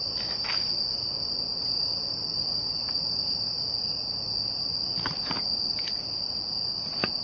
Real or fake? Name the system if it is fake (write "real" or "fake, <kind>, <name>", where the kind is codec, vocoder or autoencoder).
real